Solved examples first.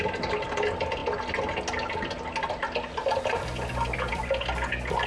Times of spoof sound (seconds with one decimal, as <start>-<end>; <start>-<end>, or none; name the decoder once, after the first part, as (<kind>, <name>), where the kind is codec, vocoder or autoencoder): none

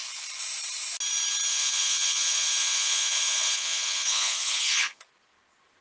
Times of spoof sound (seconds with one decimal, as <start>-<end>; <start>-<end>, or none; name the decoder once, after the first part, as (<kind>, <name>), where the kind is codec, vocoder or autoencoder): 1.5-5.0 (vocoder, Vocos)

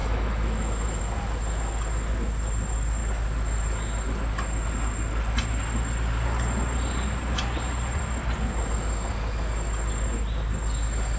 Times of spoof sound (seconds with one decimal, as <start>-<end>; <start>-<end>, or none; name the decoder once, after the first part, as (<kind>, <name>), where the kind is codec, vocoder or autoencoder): 0.0-1.0 (autoencoder, DAC-VAE)